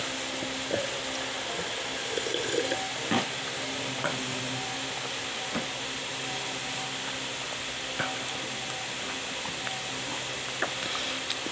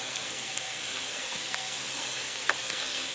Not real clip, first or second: second